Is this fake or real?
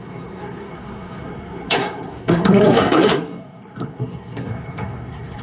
fake